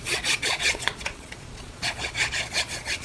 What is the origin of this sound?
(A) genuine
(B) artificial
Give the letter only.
B